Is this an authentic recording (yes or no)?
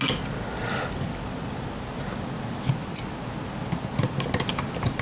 yes